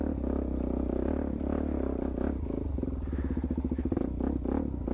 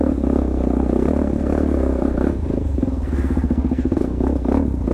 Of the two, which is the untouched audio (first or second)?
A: first